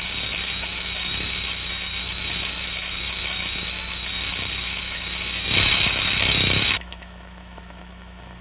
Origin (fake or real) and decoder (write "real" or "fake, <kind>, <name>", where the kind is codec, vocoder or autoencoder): fake, autoencoder, DAC-VAE